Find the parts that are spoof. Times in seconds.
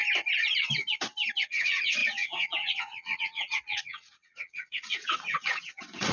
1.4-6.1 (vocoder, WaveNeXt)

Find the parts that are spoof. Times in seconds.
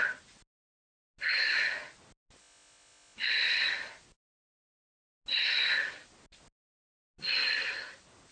none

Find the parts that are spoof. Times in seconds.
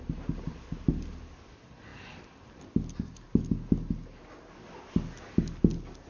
none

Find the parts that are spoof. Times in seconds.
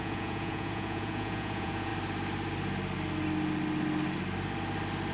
0.0-1.9 (vocoder, Vocos)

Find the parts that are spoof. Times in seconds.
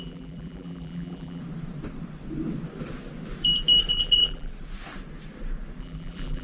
0.0-1.4 (vocoder, BigVGAN v2); 3.9-4.5; 5.8-6.4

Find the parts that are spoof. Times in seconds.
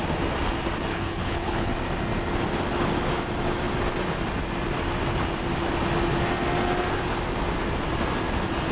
0.9-1.7 (codec, HILCodec)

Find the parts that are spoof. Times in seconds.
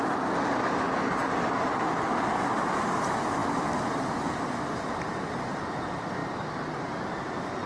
6.2-6.8 (vocoder, BigVGAN v2)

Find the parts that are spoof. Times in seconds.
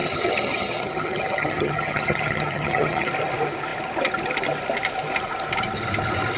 0.0-3.1 (vocoder, HiFi-GAN)